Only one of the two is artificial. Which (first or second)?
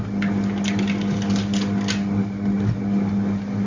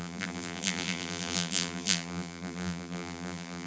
second